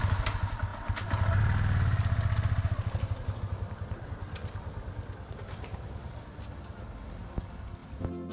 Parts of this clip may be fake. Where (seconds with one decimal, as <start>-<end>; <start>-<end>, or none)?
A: none